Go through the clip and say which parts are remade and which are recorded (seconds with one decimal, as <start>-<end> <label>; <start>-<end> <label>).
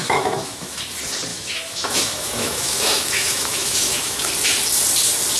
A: 0.0-0.8 remade; 0.8-1.3 recorded; 1.3-4.3 remade; 4.3-5.4 recorded